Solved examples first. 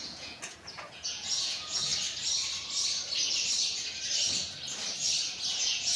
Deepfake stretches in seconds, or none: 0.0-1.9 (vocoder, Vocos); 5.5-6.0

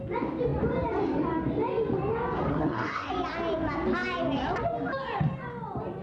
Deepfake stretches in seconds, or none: 2.5-3.1 (codec, SNAC)

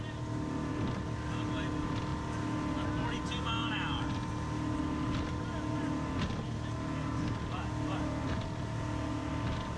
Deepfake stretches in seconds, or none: none